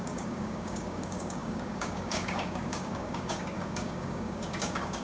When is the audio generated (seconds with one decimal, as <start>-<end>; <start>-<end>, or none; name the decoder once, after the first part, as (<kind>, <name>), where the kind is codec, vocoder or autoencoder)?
0.0-5.0 (codec, DAC)